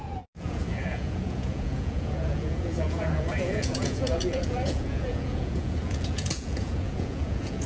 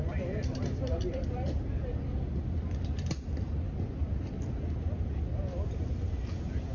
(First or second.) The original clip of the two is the second